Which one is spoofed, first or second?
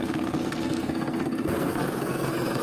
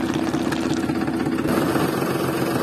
first